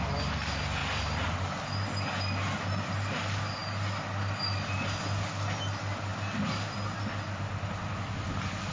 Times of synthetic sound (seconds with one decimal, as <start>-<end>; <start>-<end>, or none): none